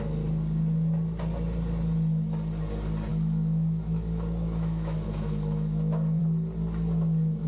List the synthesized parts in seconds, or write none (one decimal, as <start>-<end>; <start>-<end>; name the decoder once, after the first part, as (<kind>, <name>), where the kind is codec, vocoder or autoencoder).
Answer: 3.1-6.2 (autoencoder, DAC-VAE)